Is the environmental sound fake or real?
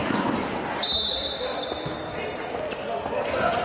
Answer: real